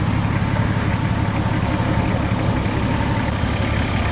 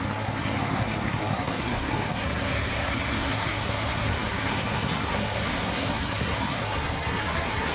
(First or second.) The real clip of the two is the first